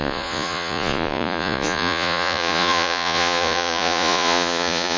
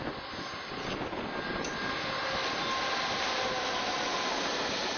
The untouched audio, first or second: second